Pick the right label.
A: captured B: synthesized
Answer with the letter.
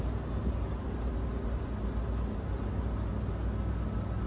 A